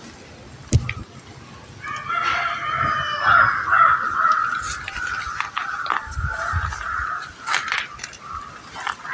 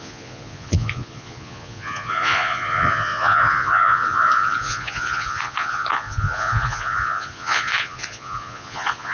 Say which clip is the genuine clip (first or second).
first